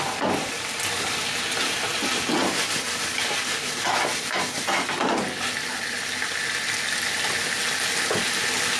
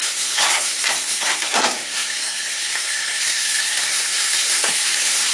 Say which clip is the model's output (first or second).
second